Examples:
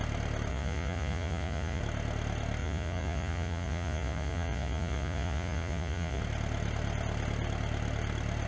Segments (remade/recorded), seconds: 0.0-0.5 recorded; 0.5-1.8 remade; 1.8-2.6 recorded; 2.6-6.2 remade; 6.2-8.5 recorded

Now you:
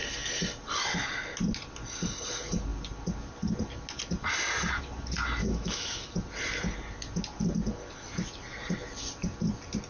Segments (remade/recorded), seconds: 0.0-5.4 recorded; 5.4-6.1 remade; 6.1-9.9 recorded